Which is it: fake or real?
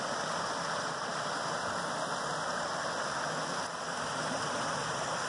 real